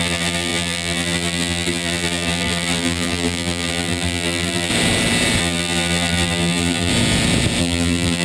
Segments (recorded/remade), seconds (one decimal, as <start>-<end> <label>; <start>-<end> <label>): 0.0-4.7 remade; 4.7-5.4 recorded; 5.4-6.9 remade; 6.9-7.6 recorded; 7.6-8.2 remade